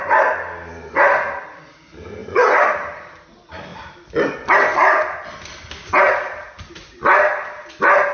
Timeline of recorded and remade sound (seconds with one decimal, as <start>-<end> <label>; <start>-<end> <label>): 0.0-8.1 recorded